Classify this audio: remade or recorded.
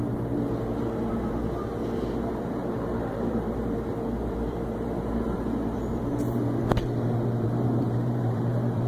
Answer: remade